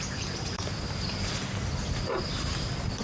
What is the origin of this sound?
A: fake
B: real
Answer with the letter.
A